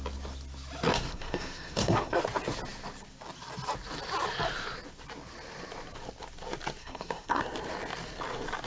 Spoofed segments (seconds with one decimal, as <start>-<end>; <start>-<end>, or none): 1.1-2.2; 6.8-7.4